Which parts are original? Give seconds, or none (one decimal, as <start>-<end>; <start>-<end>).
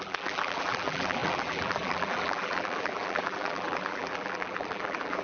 none